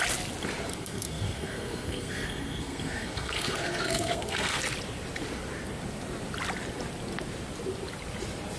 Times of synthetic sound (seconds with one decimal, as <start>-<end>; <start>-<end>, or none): 0.7-4.6